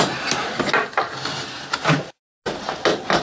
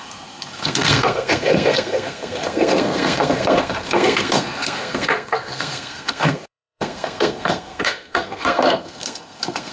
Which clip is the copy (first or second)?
second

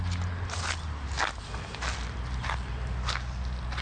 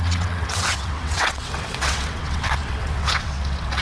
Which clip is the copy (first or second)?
second